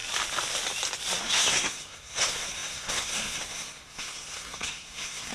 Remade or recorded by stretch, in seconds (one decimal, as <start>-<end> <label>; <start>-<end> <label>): 0.0-1.2 recorded; 1.2-5.3 remade